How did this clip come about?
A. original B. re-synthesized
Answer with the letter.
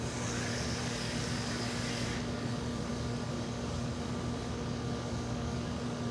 B